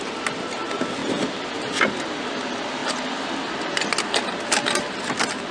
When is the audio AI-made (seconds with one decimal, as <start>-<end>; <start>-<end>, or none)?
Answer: none